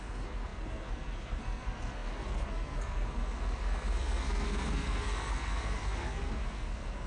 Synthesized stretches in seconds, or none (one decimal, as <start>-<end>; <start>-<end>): 0.0-7.1